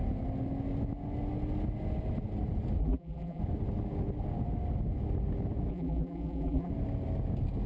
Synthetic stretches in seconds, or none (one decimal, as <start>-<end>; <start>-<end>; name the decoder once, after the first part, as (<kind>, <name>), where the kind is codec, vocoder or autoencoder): 2.8-3.4 (vocoder, BigVGAN v2); 5.7-6.7